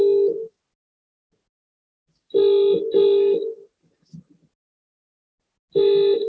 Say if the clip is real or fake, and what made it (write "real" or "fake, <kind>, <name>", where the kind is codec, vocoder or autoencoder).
real